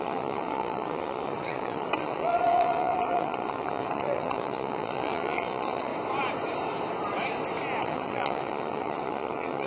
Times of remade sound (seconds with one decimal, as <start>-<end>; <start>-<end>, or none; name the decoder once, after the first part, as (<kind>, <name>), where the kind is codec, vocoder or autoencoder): 0.0-5.9 (vocoder, WaveNeXt); 7.8-9.7